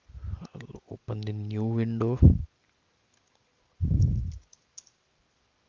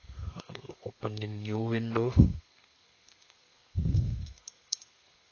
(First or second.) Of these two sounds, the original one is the first